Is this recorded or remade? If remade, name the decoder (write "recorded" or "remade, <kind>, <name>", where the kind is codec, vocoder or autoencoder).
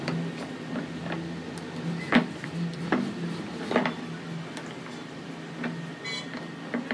recorded